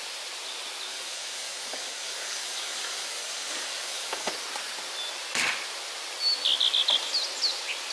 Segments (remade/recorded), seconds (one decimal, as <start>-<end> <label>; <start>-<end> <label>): 0.0-0.9 recorded; 0.9-4.3 remade; 4.3-7.9 recorded